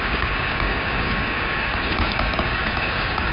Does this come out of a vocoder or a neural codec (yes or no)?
yes